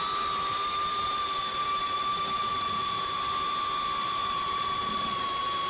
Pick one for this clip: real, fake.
real